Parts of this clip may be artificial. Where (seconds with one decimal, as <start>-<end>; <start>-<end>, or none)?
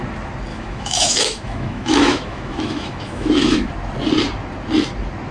0.5-3.7